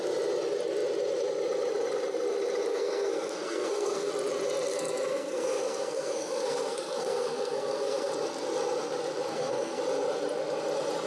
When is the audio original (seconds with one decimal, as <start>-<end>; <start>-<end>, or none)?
0.0-2.7; 4.1-4.7; 8.1-9.3; 9.8-11.1